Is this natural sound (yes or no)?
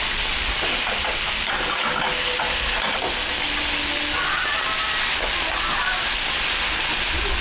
yes